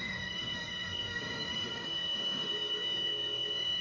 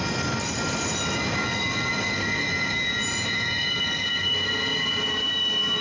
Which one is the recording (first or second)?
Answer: second